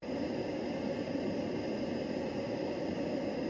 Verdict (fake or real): real